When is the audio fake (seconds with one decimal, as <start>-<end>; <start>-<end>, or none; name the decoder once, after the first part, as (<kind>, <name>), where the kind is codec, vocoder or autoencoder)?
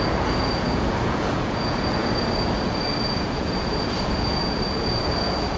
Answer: 0.0-5.6 (vocoder, Vocos)